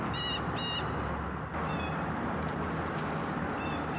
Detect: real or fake real